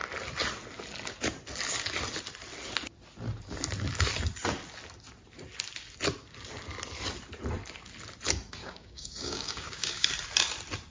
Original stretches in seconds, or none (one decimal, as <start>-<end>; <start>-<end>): 0.0-8.6; 10.1-10.9

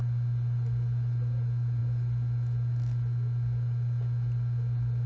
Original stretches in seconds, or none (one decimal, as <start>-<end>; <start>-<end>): 0.0-5.1

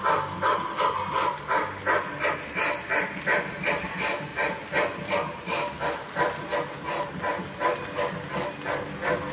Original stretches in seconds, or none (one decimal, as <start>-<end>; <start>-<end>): 0.0-9.3

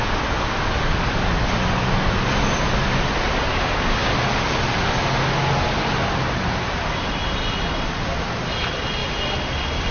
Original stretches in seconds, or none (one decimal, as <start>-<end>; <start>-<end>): 0.0-3.5; 4.1-9.9

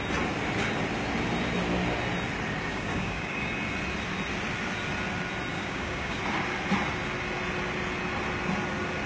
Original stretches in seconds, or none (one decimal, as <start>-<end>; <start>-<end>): 0.0-2.7; 3.5-5.5; 6.2-9.1